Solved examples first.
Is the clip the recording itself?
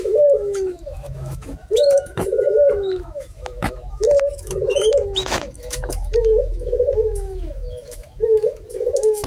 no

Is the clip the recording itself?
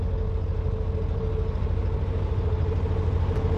yes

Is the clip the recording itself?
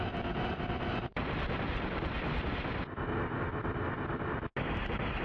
yes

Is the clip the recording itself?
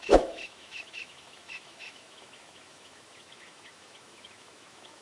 no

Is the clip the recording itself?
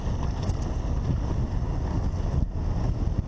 yes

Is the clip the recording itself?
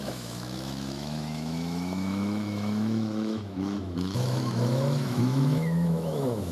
no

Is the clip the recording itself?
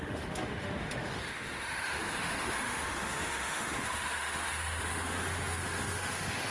no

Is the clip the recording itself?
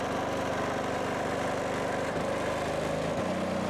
yes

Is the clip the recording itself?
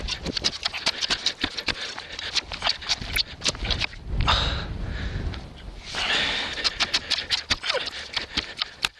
yes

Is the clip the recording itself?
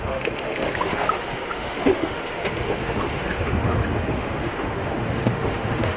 no